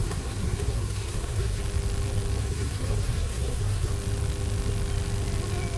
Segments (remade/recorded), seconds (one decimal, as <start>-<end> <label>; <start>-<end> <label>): 0.0-1.6 remade; 1.6-2.4 recorded; 2.4-3.9 remade; 3.9-5.8 recorded